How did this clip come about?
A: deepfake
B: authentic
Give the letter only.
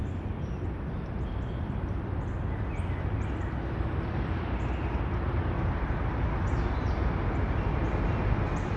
B